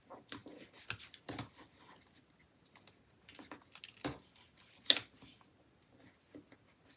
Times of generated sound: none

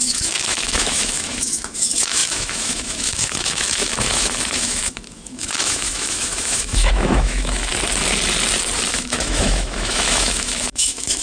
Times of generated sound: 0.0-7.7 (autoencoder, DAC-VAE); 8.9-11.2

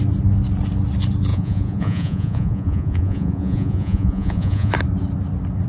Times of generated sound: 1.3-4.7 (vocoder, Vocos)

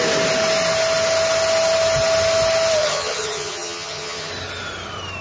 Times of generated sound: 2.8-4.3 (vocoder, HiFi-GAN)

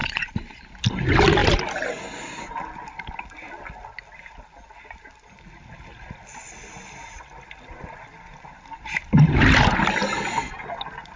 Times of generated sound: 0.0-0.6 (vocoder, Vocos)

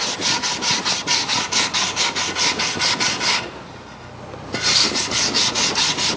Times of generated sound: 4.8-6.2 (vocoder, Vocos)

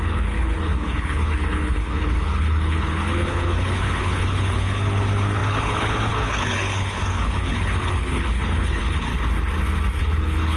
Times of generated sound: 0.0-9.1 (codec, HILCodec); 10.0-10.6

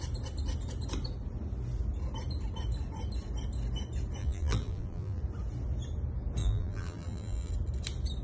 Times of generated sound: 4.2-5.2 (vocoder, BigVGAN v2); 6.4-7.5